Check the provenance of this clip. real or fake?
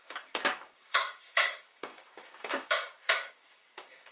fake